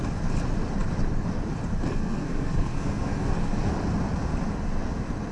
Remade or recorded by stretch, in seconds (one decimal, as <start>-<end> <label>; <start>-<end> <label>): 0.0-1.9 recorded; 1.9-3.7 remade; 3.7-5.3 recorded